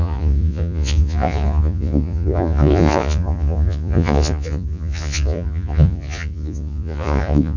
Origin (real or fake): fake